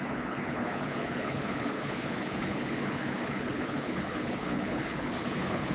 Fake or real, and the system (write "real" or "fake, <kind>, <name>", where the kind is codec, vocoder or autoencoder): fake, codec, HILCodec